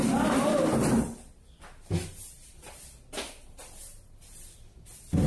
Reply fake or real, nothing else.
real